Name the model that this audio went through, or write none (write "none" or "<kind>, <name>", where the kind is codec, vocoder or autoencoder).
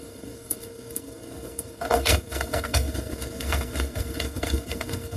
codec, SNAC